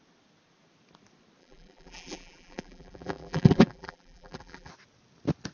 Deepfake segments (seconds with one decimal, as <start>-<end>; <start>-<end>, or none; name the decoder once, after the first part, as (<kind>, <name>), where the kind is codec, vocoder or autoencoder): 1.4-4.7 (vocoder, BigVGAN v2)